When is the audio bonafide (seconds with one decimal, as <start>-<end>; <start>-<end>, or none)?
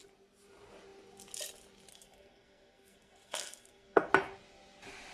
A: 0.0-1.9; 4.1-5.1